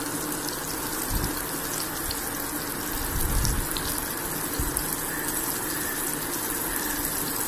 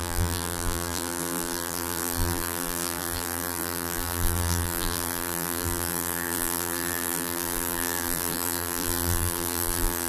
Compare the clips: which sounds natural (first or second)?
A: first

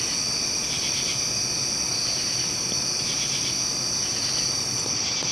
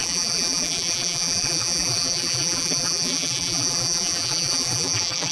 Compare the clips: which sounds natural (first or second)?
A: first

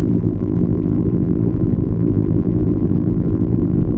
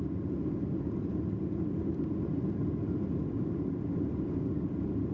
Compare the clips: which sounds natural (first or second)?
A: second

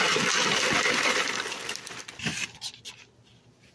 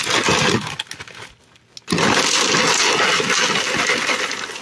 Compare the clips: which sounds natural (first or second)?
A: second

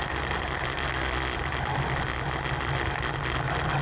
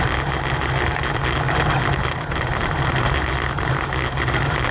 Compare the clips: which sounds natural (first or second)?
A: first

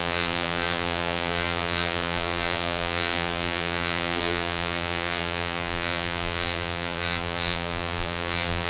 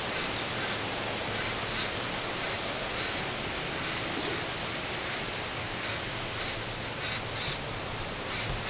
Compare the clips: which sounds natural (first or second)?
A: second